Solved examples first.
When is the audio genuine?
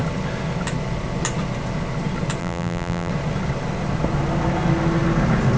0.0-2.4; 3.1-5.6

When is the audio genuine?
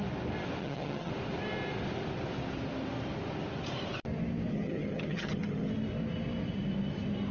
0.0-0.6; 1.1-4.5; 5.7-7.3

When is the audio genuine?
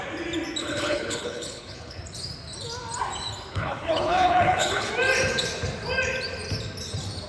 0.0-0.6; 2.0-3.5; 4.9-7.3